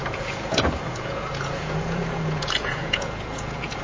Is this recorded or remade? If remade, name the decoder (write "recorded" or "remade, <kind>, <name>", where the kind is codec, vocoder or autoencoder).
remade, vocoder, Vocos